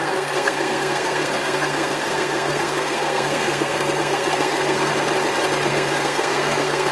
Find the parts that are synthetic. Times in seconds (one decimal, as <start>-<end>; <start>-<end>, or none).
0.0-4.9; 5.7-6.9